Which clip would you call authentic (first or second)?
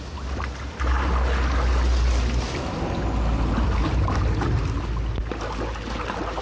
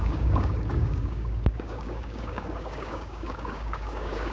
first